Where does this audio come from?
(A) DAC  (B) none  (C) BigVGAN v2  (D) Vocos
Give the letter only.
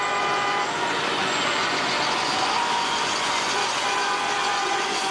D